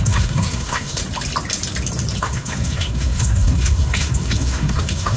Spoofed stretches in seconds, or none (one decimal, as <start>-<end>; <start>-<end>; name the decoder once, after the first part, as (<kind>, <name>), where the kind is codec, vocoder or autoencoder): 0.0-1.0 (codec, SNAC); 2.2-5.2